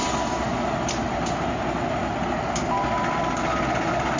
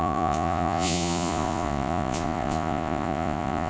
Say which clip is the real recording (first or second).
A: first